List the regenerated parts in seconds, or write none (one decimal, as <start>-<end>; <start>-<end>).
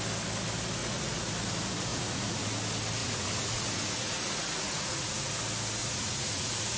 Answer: 0.8-1.3; 1.9-2.5; 3.0-5.3; 5.8-6.8